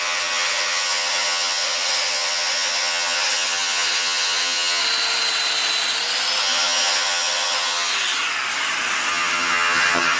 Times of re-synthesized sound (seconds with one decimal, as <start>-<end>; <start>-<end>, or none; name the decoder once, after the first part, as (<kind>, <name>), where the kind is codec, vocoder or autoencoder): 0.0-4.8 (vocoder, HiFi-GAN); 6.4-7.9; 9.1-10.2